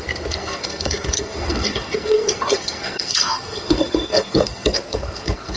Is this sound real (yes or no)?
no